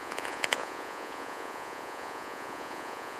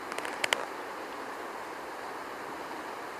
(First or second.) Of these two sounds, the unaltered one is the second